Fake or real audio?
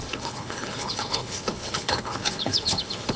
fake